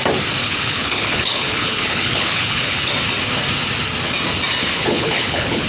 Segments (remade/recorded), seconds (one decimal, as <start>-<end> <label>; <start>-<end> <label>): 0.0-0.4 recorded; 0.4-2.9 remade; 2.9-4.6 recorded; 4.6-5.7 remade